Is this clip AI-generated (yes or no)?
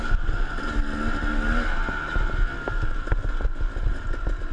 no